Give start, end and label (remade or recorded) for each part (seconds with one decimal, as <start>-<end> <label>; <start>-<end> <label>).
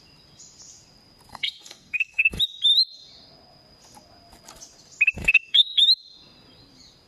0.0-1.3 recorded; 1.3-2.4 remade; 2.4-5.2 recorded; 5.2-5.8 remade; 5.8-7.1 recorded